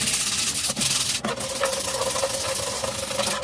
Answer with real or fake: real